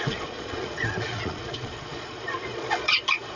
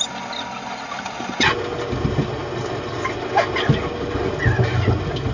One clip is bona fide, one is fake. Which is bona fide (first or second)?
second